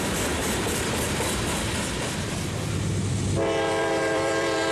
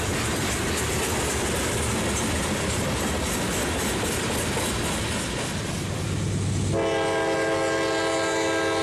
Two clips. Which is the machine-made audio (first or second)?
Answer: first